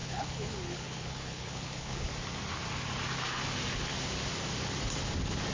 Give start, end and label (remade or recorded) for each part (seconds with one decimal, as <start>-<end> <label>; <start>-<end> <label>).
0.0-2.1 remade; 2.1-5.5 recorded